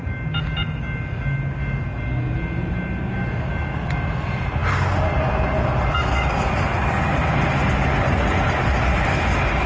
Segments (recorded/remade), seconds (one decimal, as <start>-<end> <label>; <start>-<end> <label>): 0.0-9.7 recorded